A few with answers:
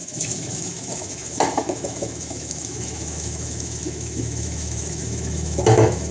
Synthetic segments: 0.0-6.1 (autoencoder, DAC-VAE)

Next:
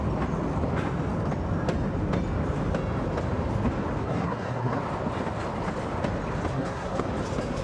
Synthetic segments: 4.0-4.8 (codec, SNAC); 6.5-7.1

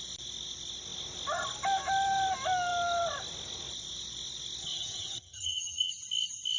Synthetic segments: 4.6-5.9 (vocoder, HiFi-GAN)

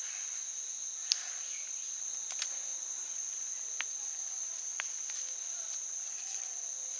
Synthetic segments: 5.8-6.5 (vocoder, BigVGAN v2)

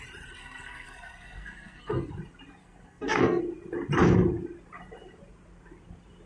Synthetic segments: 0.4-2.1 (codec, SNAC); 2.6-3.4

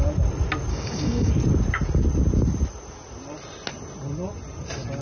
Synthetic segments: 0.7-1.3 (codec, DAC)

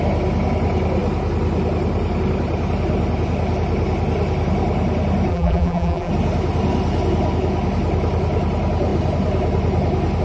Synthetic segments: 5.3-6.1 (vocoder, BigVGAN v2)

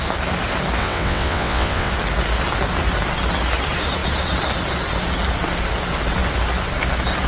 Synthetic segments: 0.8-1.9 (vocoder, WaveNeXt)